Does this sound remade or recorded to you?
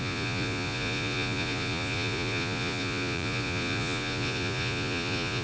remade